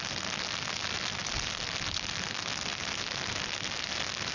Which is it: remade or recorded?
recorded